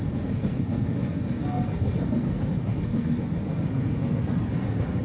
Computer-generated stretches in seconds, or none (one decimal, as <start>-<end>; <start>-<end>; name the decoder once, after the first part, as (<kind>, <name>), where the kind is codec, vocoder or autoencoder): 0.0-5.0 (codec, SNAC)